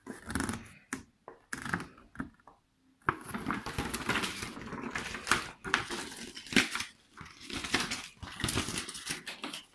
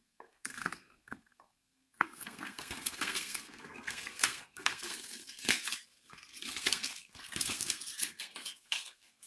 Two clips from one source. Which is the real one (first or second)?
first